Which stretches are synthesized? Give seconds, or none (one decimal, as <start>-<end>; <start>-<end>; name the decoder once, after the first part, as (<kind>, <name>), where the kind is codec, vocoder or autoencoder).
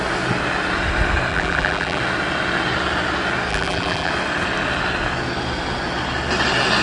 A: 1.3-2.0 (vocoder, BigVGAN v2); 3.5-4.1